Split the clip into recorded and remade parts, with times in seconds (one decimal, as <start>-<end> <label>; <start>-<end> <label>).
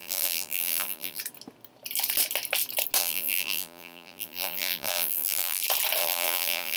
0.0-1.2 remade; 1.2-3.0 recorded; 3.0-5.6 remade; 5.6-6.0 recorded; 6.0-6.8 remade